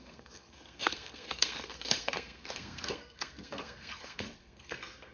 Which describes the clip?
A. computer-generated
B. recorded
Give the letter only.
A